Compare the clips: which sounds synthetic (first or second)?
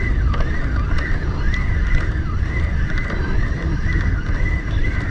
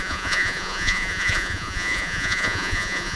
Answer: second